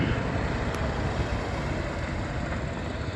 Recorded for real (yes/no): yes